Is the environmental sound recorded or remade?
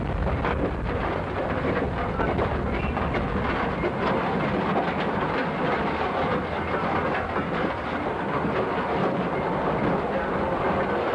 recorded